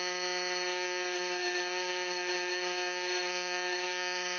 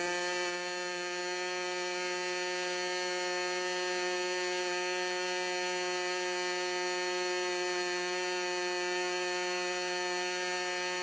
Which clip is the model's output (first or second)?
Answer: first